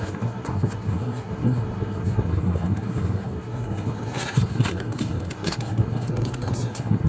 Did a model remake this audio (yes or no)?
yes